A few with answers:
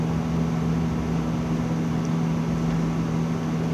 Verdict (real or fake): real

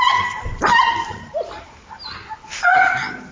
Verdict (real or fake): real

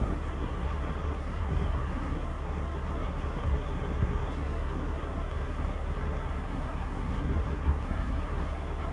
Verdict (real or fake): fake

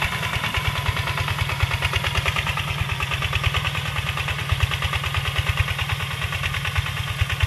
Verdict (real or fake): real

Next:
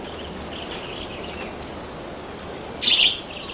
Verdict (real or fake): real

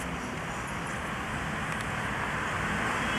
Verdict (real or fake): real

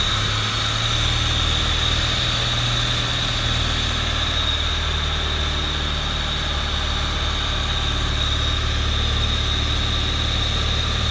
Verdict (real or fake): real